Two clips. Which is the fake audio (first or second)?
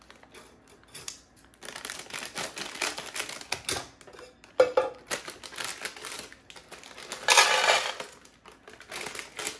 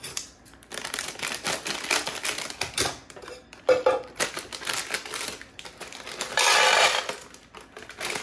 second